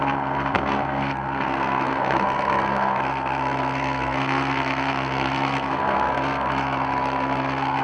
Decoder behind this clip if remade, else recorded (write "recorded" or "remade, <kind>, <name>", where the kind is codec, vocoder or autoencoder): remade, codec, SNAC